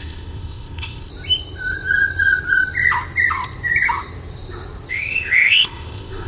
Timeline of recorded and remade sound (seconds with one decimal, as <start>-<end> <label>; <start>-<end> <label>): 0.0-1.1 remade; 1.1-4.9 recorded; 4.9-6.3 remade